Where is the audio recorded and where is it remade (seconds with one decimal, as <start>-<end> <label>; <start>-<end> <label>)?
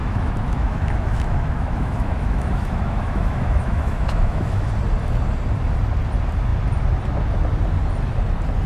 0.0-4.7 remade; 4.7-8.7 recorded